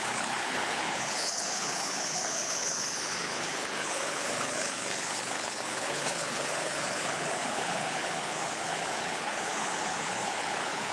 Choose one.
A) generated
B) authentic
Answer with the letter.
A